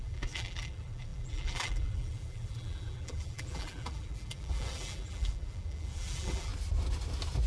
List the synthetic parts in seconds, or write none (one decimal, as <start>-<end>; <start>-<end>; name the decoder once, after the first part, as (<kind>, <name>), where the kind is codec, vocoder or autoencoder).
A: 0.0-6.5 (vocoder, BigVGAN v2)

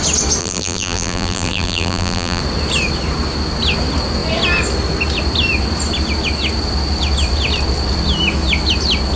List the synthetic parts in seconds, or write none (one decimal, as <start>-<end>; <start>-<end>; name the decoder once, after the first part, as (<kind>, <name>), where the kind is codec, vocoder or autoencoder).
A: 0.4-2.4 (vocoder, BigVGAN v2)

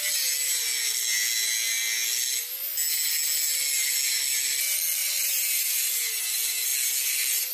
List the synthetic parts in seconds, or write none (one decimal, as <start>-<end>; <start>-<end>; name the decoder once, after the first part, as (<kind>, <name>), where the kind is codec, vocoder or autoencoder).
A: 5.0-6.2 (vocoder, BigVGAN v2)

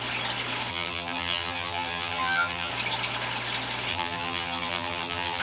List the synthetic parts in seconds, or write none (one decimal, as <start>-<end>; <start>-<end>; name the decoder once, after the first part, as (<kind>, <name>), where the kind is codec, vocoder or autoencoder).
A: 0.7-2.7 (vocoder, BigVGAN v2); 3.9-5.4